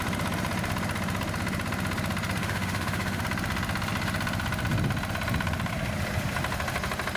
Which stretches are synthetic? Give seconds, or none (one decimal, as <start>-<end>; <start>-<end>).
2.4-3.2